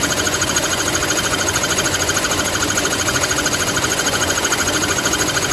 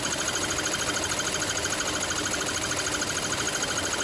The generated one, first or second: first